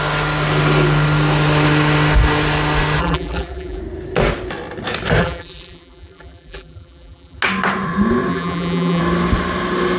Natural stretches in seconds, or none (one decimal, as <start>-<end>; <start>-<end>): 0.0-3.0; 3.8-5.2; 7.4-8.3; 9.0-10.0

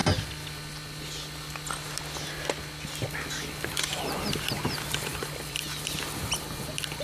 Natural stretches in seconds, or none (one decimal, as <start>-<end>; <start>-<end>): 0.0-5.1; 6.0-7.0

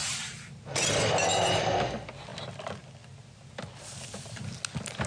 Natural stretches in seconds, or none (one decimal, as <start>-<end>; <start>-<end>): 1.0-5.1

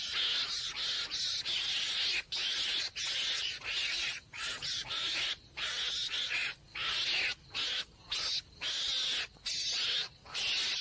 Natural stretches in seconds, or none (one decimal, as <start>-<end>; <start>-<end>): 0.0-10.8

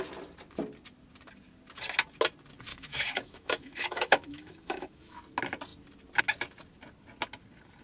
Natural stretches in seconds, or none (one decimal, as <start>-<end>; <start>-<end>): 0.0-2.7; 5.2-7.8